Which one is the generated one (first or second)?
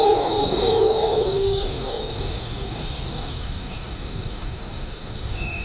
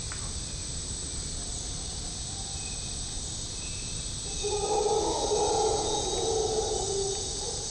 first